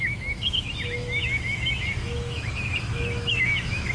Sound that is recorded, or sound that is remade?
remade